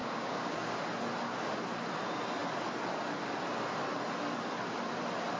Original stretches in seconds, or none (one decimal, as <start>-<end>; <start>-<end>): 0.8-5.4